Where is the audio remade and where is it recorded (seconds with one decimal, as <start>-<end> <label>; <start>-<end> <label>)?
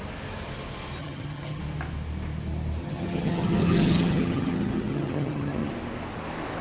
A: 0.0-1.0 recorded; 1.0-1.6 remade; 1.6-2.8 recorded; 2.8-5.7 remade; 5.7-6.6 recorded